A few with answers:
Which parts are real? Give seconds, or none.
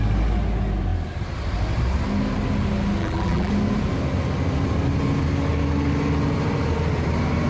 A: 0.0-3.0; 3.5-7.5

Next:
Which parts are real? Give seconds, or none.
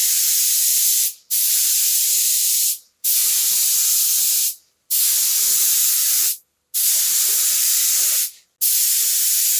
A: 0.0-9.6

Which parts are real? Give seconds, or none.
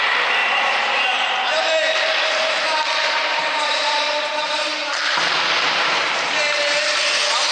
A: 0.0-0.4; 1.5-3.0; 7.1-7.5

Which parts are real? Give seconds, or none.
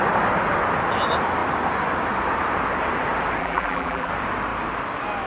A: 0.0-3.4; 4.1-5.3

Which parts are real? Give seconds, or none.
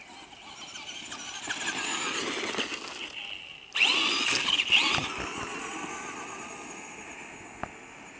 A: 0.0-8.2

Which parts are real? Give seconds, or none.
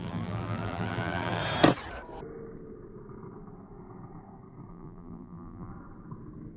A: 1.4-4.7; 5.7-6.6